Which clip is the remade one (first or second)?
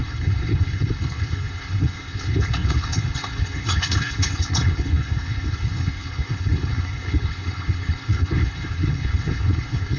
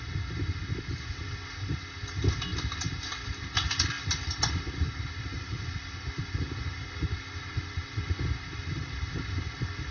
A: first